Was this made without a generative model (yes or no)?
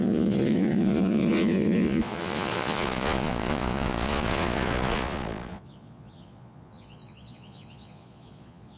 no